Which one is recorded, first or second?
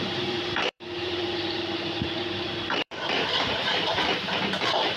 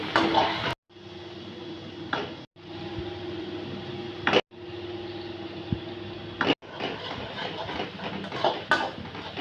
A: second